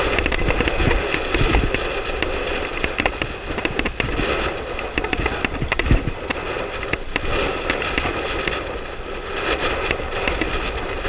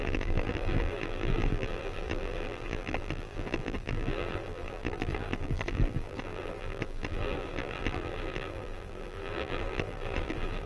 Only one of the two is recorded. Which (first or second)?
first